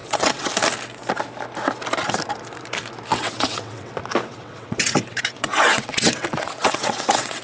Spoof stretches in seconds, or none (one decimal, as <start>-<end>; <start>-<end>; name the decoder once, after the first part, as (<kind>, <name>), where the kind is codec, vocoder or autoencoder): 0.0-0.5 (vocoder, WaveNeXt); 3.1-3.9; 4.3-7.4